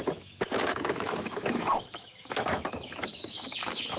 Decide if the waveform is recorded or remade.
remade